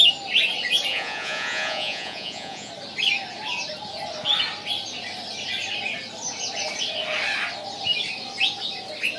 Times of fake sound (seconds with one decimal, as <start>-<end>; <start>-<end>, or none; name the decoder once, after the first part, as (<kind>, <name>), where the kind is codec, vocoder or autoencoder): 0.9-2.7 (vocoder, Vocos)